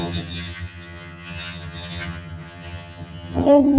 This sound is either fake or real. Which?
fake